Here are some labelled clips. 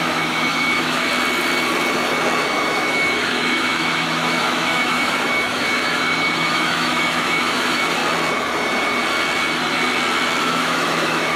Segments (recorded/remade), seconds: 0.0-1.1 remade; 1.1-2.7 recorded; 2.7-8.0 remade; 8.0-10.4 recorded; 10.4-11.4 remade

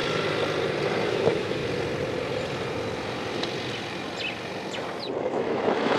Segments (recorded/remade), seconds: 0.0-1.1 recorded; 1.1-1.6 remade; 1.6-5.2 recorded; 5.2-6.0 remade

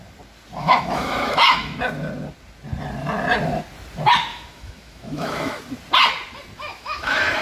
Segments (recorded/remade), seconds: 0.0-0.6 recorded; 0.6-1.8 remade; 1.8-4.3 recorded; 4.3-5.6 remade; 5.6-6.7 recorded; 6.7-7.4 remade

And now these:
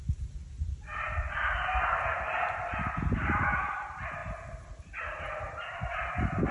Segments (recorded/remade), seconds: 0.0-6.5 recorded